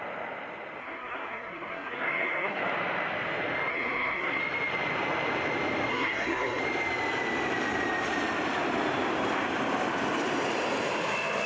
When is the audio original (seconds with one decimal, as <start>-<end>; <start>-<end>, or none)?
0.0-0.8; 2.6-3.7; 4.4-5.9; 6.6-11.5